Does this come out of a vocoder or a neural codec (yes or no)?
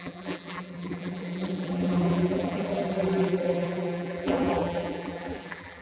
yes